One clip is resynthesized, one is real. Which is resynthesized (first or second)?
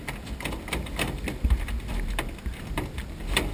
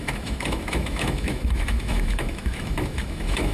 second